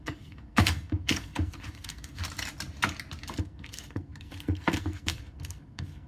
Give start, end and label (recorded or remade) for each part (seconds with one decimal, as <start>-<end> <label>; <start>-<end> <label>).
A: 0.0-2.2 remade; 2.2-3.4 recorded; 3.4-6.1 remade